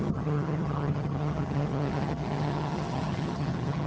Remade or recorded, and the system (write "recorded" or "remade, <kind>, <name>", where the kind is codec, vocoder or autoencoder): remade, vocoder, HiFi-GAN